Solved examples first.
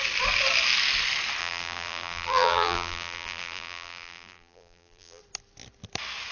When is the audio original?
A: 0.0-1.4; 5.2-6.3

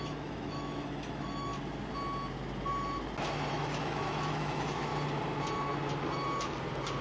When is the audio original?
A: 1.5-3.5; 4.9-7.0

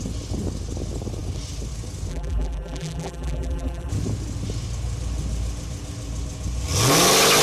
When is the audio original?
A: 0.0-2.1; 3.9-7.4

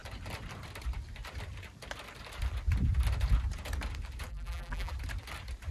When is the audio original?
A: 0.0-4.3; 4.9-5.7